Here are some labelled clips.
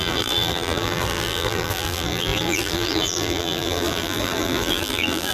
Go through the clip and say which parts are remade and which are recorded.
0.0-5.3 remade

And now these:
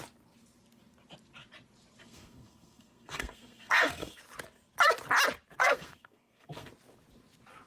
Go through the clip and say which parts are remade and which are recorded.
0.0-2.0 recorded; 2.0-4.2 remade; 4.2-5.6 recorded; 5.6-6.7 remade; 6.7-7.7 recorded

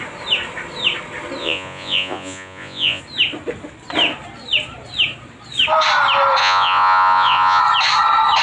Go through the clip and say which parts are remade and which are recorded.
0.0-1.4 recorded; 1.4-3.0 remade; 3.0-6.4 recorded; 6.4-7.6 remade; 7.6-8.4 recorded

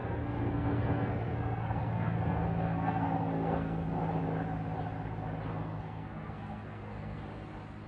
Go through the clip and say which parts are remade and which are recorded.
0.0-4.0 remade; 4.0-5.5 recorded; 5.5-7.2 remade; 7.2-7.9 recorded

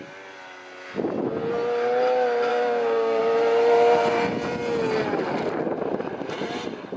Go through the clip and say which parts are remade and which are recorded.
0.0-2.5 recorded; 2.5-3.2 remade; 3.2-7.0 recorded

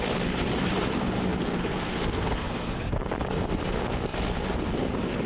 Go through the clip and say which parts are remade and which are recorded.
0.0-1.6 recorded; 1.6-3.0 remade; 3.0-5.3 recorded